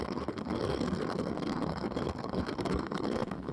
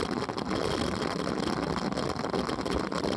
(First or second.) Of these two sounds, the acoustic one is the second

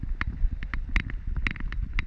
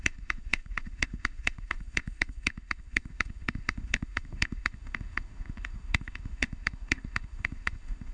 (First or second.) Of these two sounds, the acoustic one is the first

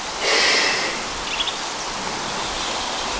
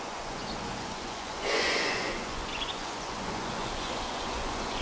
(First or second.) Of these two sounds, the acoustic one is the first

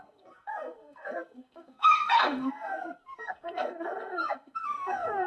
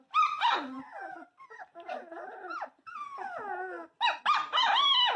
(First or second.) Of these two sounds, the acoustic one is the second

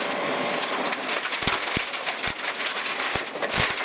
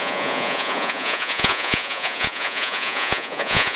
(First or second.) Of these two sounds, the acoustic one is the first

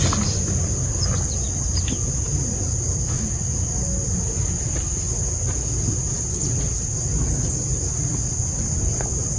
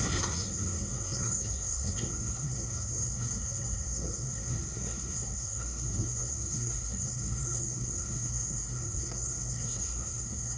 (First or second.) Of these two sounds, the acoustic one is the first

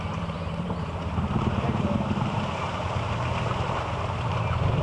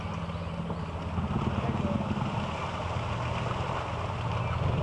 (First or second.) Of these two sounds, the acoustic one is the second